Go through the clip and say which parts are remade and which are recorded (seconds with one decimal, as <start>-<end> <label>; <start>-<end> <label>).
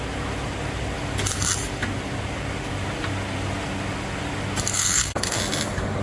0.0-4.7 recorded; 4.7-5.4 remade; 5.4-6.0 recorded